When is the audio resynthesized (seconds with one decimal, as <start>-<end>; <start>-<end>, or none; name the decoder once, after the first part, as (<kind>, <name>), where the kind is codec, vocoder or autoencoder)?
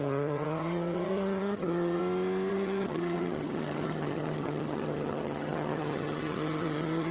0.0-2.0 (vocoder, HiFi-GAN); 2.5-7.1